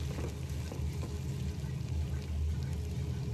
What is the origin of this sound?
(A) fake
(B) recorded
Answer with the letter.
B